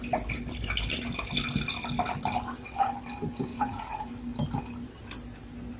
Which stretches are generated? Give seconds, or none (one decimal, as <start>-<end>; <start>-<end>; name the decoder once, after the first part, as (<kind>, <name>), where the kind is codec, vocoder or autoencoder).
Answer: 3.5-4.1 (vocoder, Vocos)